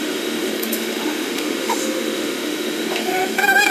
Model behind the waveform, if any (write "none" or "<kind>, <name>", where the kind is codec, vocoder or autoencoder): autoencoder, DAC-VAE